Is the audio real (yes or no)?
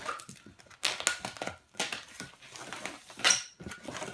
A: yes